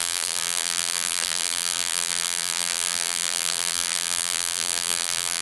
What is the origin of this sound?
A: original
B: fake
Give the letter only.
B